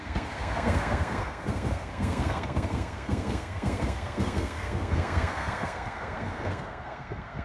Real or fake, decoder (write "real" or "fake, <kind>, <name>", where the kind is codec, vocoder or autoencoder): fake, codec, SNAC